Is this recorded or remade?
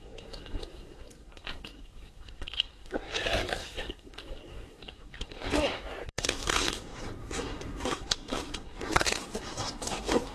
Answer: remade